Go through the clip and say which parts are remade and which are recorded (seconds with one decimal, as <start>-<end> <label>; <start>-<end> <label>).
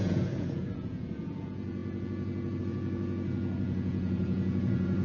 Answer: 0.0-5.0 remade